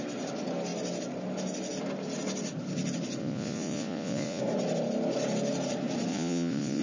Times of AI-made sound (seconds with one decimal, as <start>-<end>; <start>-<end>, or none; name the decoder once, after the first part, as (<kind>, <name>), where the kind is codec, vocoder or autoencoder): 3.2-4.4 (vocoder, Vocos); 6.1-6.8